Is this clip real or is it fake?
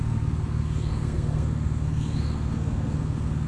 fake